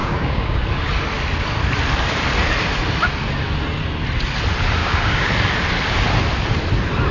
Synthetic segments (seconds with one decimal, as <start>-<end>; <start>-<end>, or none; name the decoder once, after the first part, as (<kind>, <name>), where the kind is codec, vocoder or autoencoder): 0.0-0.6 (codec, DAC); 4.8-5.3